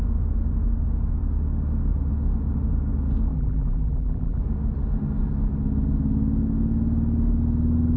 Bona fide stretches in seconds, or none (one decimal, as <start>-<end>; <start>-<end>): 0.0-3.3; 4.4-8.0